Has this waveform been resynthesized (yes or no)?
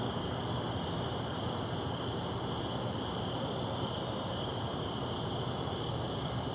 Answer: no